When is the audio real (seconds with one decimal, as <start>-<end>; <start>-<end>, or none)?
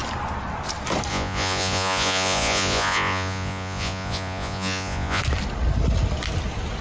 0.0-1.1; 5.2-6.8